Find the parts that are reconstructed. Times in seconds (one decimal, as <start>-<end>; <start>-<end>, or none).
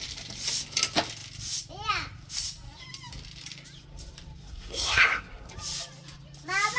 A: 4.4-5.5